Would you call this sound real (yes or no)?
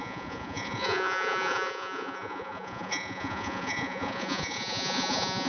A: no